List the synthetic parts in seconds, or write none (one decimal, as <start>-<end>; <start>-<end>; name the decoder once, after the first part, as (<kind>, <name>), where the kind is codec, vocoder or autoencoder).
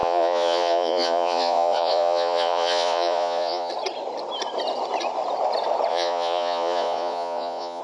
0.0-3.7 (vocoder, Vocos); 5.9-7.8